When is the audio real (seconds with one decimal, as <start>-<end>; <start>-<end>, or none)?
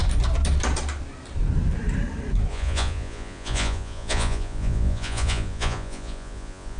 0.0-2.5